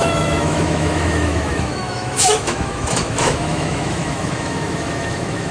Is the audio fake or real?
fake